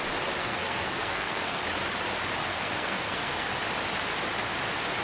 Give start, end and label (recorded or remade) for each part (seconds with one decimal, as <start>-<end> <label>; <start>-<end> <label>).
0.0-0.4 recorded; 0.4-1.6 remade; 1.6-2.5 recorded; 2.5-3.5 remade; 3.5-5.0 recorded